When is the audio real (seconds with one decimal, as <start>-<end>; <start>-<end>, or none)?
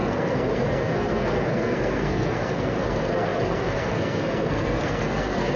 none